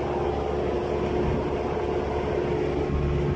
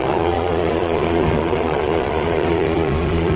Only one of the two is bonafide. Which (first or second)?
first